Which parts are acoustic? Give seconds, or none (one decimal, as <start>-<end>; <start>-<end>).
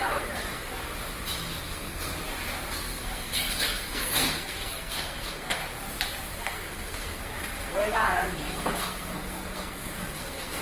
0.7-1.7; 2.1-2.7; 5.6-6.3